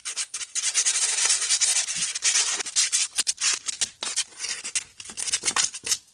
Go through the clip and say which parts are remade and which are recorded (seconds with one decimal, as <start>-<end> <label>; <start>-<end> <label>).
0.0-1.1 remade; 1.1-1.7 recorded; 1.7-3.8 remade; 3.8-6.1 recorded